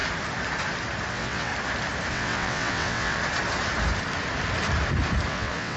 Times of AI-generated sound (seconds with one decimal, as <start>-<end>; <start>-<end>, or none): 1.1-1.5; 2.1-3.2; 5.3-5.8

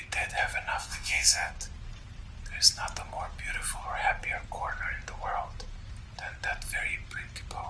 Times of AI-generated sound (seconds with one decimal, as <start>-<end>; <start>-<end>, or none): 0.8-1.5

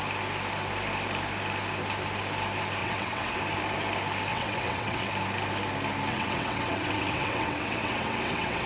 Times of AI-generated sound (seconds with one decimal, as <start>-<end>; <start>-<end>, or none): 2.8-3.4; 4.3-5.1; 6.1-8.7

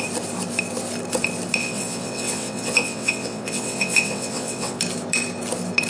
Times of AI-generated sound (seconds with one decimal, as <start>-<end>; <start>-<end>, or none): 1.6-4.8

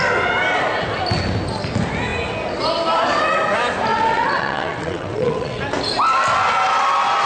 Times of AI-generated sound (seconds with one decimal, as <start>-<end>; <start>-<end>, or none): 3.9-5.6

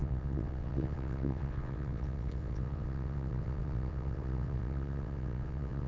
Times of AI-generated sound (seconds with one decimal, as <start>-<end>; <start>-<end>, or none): 0.0-5.9

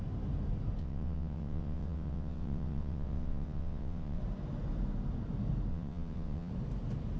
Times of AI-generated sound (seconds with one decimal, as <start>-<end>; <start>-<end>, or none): 0.8-4.2; 5.7-6.5

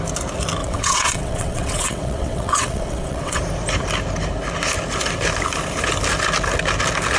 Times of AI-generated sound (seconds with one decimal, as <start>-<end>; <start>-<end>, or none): 0.6-3.4